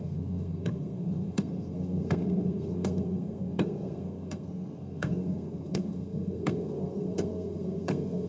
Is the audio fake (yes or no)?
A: yes